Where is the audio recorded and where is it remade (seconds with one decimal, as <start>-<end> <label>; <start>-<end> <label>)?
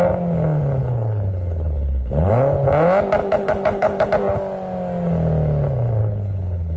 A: 0.0-0.8 recorded; 0.8-2.3 remade; 2.3-3.2 recorded; 3.2-4.1 remade; 4.1-6.0 recorded; 6.0-6.8 remade